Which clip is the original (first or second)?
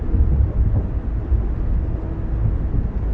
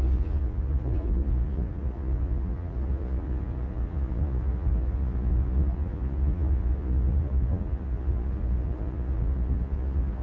first